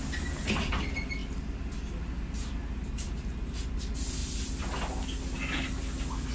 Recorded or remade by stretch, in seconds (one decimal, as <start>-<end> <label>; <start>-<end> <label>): 0.0-6.3 recorded